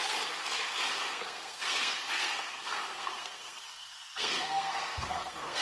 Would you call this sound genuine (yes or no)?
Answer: no